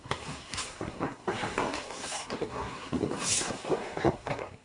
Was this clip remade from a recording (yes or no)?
yes